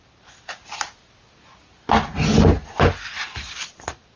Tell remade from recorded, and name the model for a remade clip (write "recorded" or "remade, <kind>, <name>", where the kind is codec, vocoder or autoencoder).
recorded